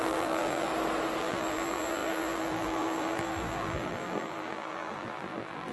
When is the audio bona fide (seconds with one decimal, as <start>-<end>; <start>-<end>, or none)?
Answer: 0.7-1.2